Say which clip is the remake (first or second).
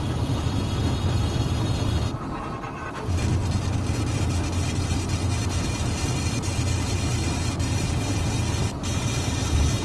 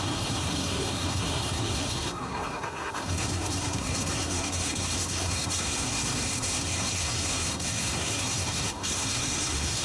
second